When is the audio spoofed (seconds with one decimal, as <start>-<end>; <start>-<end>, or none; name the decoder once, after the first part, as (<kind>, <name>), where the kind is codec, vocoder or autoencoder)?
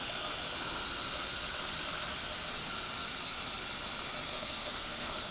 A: 4.3-5.3 (codec, SNAC)